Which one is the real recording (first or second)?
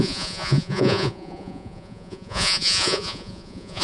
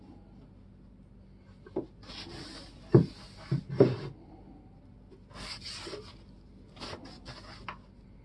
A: second